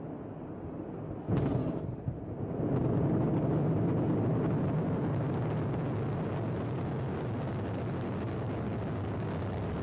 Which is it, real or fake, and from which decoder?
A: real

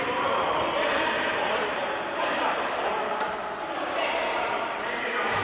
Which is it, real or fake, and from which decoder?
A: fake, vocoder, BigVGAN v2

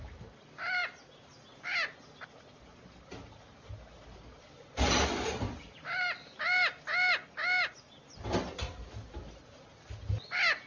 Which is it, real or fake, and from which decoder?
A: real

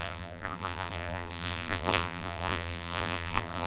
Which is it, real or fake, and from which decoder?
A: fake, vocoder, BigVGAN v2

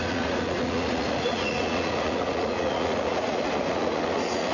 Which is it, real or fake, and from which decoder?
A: fake, vocoder, Vocos